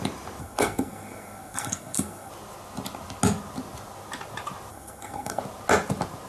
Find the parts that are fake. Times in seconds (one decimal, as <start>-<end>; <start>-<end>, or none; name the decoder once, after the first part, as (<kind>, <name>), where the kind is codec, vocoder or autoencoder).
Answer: 0.4-2.3 (codec, SNAC); 4.7-5.4